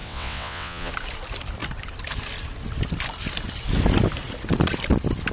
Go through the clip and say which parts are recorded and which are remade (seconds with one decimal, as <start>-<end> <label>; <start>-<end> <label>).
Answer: 0.0-0.9 remade; 0.9-5.3 recorded